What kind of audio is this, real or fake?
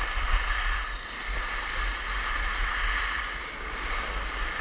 real